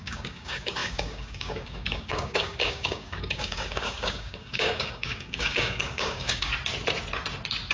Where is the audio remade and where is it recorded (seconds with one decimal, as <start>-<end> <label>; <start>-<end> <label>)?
0.0-6.5 remade; 6.5-7.7 recorded